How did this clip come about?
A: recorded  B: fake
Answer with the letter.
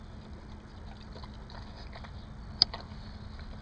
A